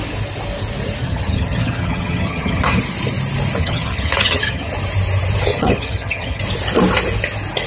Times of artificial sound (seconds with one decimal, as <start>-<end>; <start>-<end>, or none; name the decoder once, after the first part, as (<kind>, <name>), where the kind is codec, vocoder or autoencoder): 1.0-2.8 (vocoder, HiFi-GAN); 3.6-4.7; 5.5-6.4